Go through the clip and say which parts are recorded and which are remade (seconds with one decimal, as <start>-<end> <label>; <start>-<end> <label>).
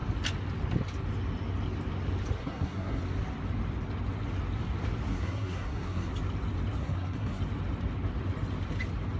0.0-2.4 recorded; 2.4-3.0 remade; 3.0-5.1 recorded; 5.1-6.1 remade; 6.1-6.8 recorded; 6.8-7.4 remade; 7.4-9.2 recorded